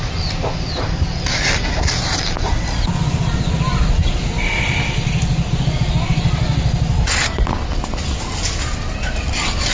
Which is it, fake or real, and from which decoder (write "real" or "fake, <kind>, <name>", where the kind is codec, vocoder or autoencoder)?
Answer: real